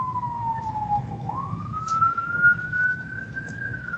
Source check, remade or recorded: remade